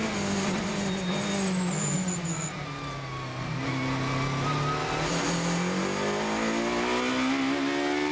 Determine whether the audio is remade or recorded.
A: recorded